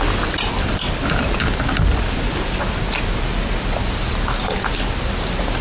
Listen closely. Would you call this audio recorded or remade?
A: recorded